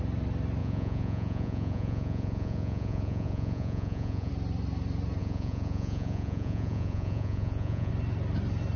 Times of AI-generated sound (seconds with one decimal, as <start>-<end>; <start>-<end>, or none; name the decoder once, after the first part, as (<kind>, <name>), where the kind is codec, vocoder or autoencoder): 0.6-4.3 (vocoder, Vocos); 5.2-7.9